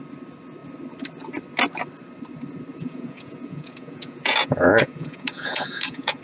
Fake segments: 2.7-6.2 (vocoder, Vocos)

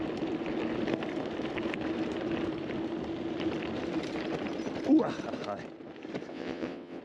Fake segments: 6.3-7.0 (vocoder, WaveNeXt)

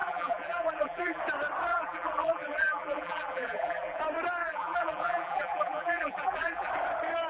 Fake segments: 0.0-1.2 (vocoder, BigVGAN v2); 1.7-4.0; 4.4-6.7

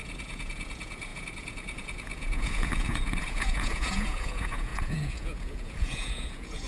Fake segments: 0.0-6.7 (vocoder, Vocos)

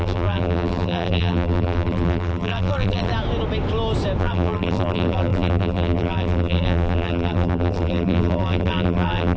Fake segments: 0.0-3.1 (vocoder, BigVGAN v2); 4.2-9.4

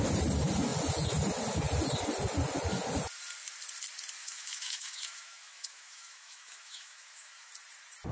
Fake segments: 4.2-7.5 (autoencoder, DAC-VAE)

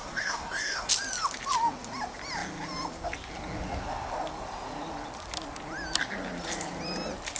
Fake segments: 0.0-0.9 (codec, SNAC)